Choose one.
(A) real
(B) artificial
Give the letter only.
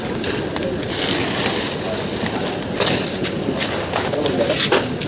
A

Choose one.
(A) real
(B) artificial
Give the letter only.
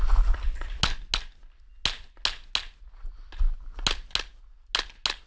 A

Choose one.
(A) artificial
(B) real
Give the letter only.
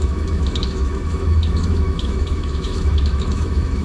A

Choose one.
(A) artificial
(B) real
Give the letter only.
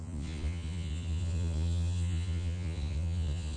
A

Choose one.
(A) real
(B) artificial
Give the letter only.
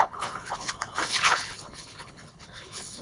B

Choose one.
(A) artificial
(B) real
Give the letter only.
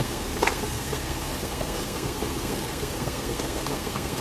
A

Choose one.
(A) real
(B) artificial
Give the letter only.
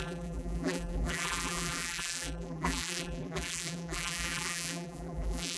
B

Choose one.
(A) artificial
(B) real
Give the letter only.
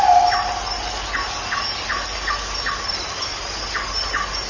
B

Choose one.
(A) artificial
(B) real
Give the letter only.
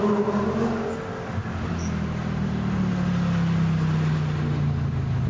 B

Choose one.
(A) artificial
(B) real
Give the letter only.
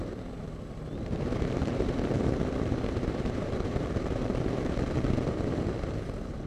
A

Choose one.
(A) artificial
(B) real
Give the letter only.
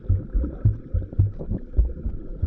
B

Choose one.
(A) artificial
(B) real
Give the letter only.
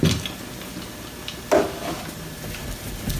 B